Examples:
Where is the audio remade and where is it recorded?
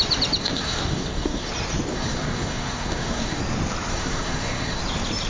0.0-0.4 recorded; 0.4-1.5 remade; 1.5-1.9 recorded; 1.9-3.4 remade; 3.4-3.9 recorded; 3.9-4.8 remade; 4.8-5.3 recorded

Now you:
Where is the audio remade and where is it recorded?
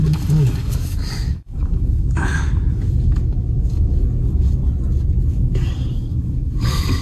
0.0-4.6 remade; 4.6-5.3 recorded; 5.3-7.0 remade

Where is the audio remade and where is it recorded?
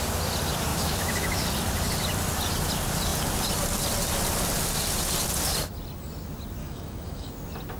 0.0-0.7 recorded; 0.7-1.4 remade; 1.4-6.6 recorded; 6.6-7.3 remade; 7.3-7.8 recorded